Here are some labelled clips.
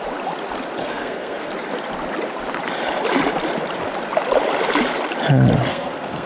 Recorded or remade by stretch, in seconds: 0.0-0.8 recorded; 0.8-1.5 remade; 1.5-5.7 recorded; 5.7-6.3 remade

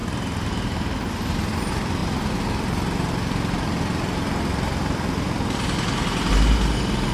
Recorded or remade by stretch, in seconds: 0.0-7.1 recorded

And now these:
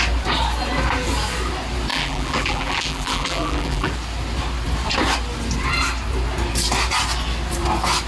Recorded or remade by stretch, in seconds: 0.0-1.9 recorded; 1.9-3.9 remade; 3.9-8.1 recorded

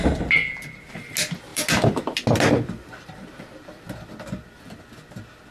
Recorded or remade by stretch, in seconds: 0.0-1.5 recorded; 1.5-4.8 remade; 4.8-5.5 recorded

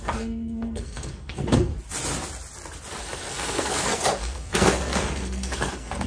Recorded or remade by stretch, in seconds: 0.0-1.7 remade; 1.7-3.0 recorded; 3.0-6.1 remade